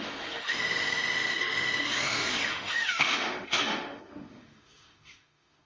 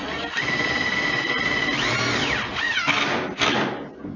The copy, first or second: first